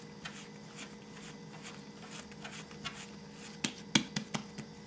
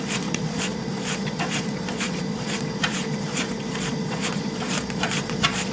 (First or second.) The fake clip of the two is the second